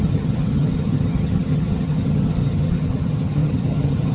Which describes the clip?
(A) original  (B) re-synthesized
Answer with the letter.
B